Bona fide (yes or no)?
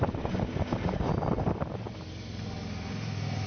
yes